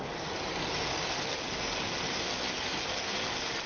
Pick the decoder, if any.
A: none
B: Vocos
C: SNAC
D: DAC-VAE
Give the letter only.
A